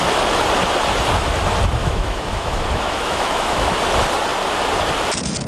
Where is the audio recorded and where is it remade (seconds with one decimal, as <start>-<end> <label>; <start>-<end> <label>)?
0.0-1.8 recorded; 1.8-3.7 remade; 3.7-5.5 recorded